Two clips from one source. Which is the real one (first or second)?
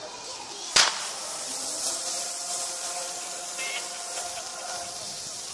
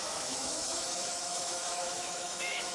first